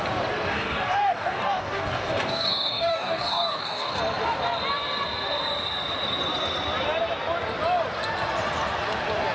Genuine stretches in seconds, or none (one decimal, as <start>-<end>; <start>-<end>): 0.0-0.5; 4.0-9.3